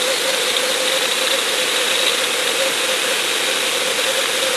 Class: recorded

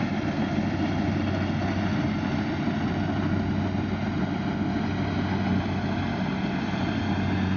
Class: recorded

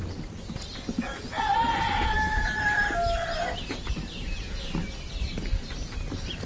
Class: recorded